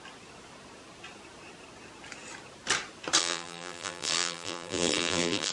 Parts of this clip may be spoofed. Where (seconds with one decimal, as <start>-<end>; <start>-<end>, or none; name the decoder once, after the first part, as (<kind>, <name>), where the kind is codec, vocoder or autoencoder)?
3.2-5.5 (vocoder, BigVGAN v2)